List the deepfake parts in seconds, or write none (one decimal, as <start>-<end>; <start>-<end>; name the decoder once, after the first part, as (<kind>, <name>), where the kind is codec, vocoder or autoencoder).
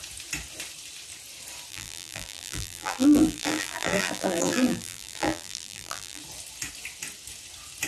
1.7-6.2 (vocoder, BigVGAN v2)